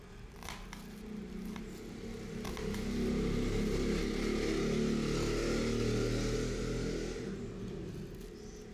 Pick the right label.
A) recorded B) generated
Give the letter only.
A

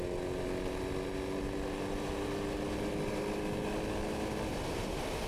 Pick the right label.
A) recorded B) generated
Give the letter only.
A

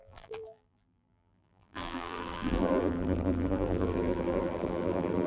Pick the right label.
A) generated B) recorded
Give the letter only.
A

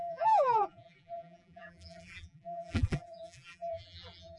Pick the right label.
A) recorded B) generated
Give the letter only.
B